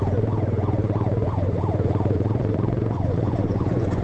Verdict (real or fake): fake